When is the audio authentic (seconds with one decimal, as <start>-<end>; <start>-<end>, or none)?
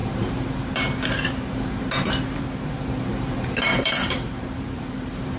none